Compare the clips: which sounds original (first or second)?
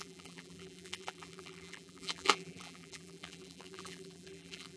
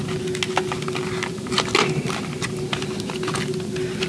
second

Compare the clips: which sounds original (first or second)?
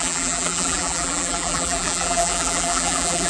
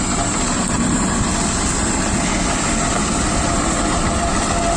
second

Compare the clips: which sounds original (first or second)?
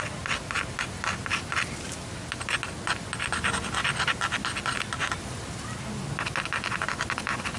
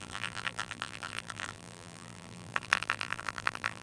first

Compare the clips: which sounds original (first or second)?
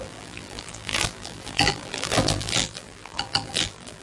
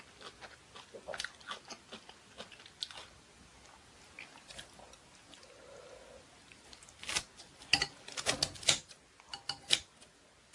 second